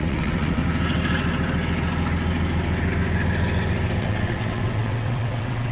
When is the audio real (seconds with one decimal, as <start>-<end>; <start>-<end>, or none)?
0.6-4.0